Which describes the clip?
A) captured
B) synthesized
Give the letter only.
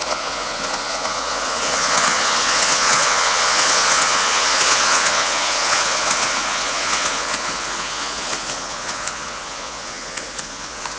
B